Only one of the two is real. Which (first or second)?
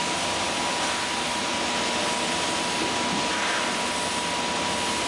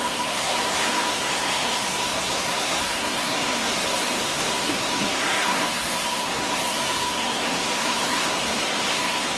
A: first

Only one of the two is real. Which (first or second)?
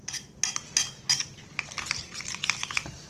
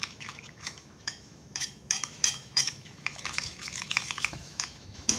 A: first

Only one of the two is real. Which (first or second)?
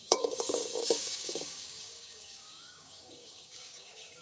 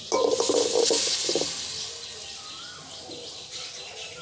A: second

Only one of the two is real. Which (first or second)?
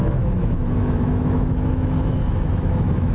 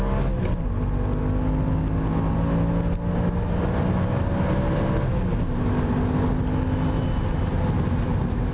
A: second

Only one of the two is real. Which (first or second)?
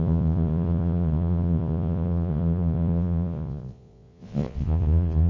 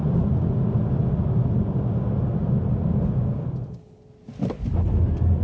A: second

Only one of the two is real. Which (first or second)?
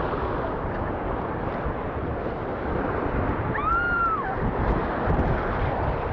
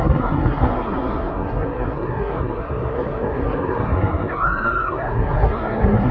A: first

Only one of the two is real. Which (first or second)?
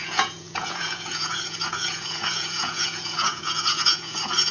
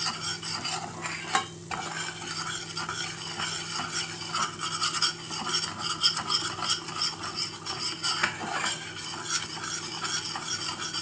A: second